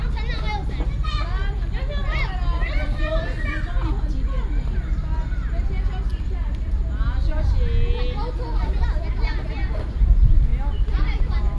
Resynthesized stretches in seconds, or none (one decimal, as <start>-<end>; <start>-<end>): 6.1-6.7; 10.5-11.2